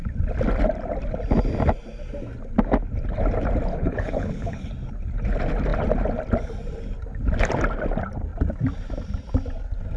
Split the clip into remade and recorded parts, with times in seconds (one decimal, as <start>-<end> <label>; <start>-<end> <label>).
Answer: 0.0-3.7 recorded; 3.7-4.7 remade; 4.7-10.0 recorded